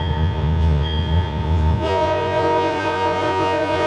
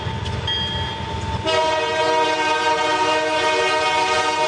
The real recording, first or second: second